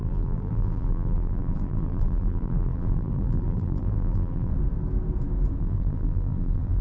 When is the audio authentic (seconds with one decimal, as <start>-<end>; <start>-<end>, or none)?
4.5-5.6